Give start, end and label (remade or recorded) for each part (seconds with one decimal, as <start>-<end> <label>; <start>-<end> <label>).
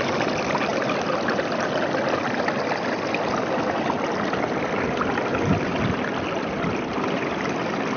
0.0-8.0 recorded